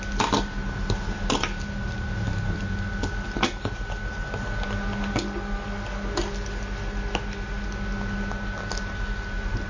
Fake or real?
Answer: real